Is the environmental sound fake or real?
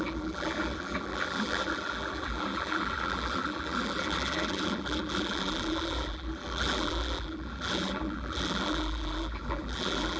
fake